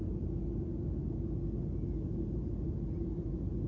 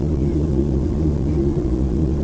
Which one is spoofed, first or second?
second